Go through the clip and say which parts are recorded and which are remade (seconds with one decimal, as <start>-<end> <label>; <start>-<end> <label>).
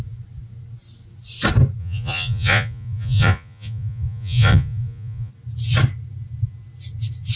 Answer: 0.0-1.8 recorded; 1.8-5.3 remade; 5.3-7.4 recorded